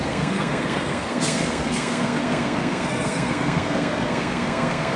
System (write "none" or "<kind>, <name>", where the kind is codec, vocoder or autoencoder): codec, SNAC